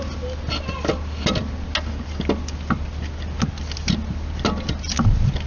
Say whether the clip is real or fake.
real